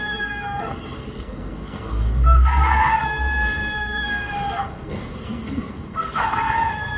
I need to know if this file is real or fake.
fake